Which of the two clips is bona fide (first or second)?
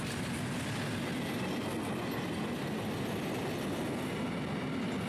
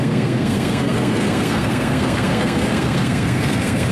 first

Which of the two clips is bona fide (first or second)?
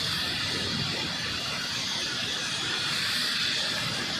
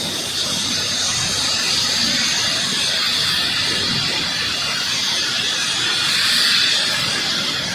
second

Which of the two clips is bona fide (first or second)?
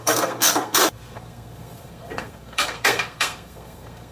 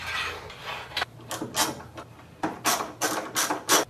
second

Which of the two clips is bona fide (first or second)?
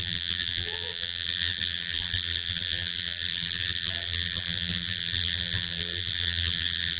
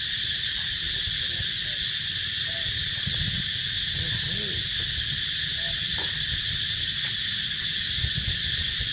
second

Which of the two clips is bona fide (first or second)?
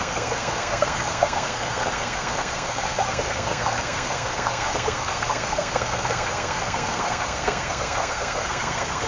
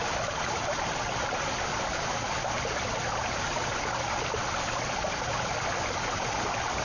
second